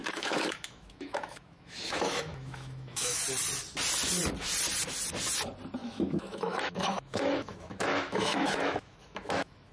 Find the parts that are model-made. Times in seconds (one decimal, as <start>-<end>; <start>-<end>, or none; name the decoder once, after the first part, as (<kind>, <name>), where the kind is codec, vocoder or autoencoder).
0.0-3.2 (autoencoder, DAC-VAE); 5.8-9.7